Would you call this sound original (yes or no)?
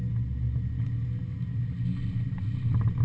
yes